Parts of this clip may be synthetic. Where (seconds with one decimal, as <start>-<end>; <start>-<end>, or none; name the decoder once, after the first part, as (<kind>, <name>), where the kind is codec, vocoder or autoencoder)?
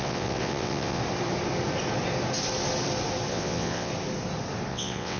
0.0-1.0 (vocoder, WaveNeXt); 3.3-3.9; 4.7-5.2